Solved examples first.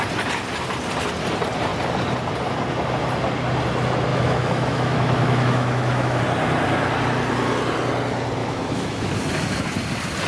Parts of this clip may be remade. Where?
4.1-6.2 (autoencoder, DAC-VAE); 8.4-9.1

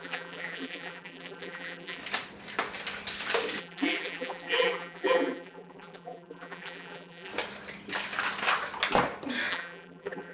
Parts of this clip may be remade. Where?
0.0-2.0 (vocoder, BigVGAN v2); 3.6-7.3; 9.5-10.3

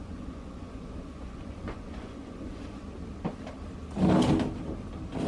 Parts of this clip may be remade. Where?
0.0-2.8 (vocoder, Vocos)

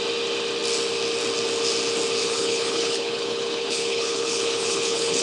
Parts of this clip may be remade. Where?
2.2-5.2 (codec, HILCodec)

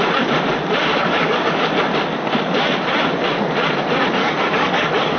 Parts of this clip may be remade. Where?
0.9-1.6 (codec, DAC); 4.2-5.2

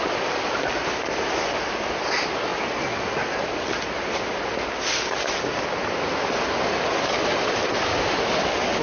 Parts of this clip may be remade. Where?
none

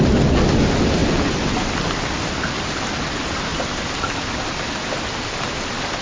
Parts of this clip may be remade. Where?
none